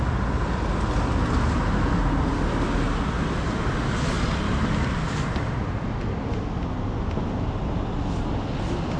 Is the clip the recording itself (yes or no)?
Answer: yes